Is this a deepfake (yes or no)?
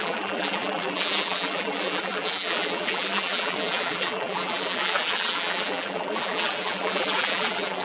yes